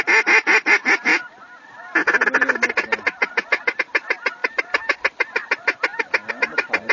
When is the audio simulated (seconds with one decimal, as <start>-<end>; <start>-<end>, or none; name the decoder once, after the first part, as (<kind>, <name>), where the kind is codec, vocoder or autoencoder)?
none

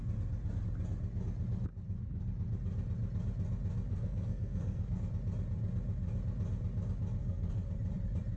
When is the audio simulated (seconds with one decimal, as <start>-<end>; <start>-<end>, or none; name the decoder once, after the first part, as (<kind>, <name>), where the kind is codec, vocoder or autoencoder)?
3.9-5.1 (codec, SNAC); 7.2-7.7

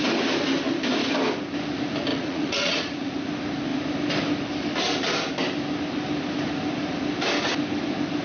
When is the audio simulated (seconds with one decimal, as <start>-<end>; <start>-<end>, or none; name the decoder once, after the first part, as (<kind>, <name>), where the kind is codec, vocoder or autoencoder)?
2.1-3.1 (vocoder, Vocos)

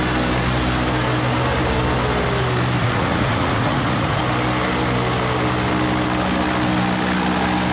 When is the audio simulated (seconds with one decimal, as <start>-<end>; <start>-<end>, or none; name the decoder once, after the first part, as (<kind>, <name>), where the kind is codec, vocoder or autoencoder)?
2.8-4.2 (vocoder, Vocos)